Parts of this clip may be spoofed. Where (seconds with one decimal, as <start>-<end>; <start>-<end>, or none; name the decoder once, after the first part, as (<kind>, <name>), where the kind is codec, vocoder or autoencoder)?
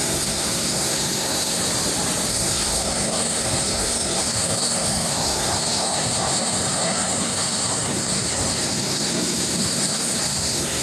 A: 0.0-1.7 (codec, SNAC); 2.3-10.8